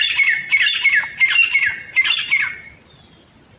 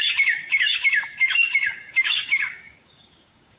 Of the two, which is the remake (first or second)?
second